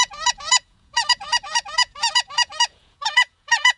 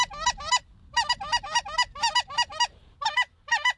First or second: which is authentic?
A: second